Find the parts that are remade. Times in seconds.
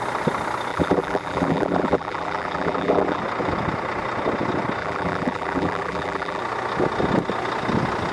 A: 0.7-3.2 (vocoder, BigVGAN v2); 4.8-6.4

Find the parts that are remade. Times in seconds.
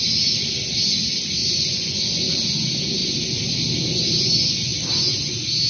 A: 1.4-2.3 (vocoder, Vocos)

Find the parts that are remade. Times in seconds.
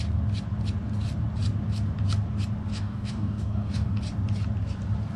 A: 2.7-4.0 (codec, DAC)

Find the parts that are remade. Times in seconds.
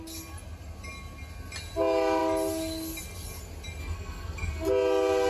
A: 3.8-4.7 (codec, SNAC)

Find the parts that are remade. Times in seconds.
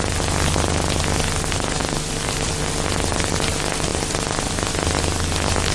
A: 1.8-2.6 (vocoder, BigVGAN v2); 3.9-5.0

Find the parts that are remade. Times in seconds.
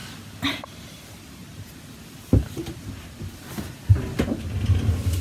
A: none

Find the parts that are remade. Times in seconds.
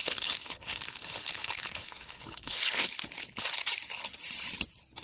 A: 0.0-3.0 (codec, HILCodec)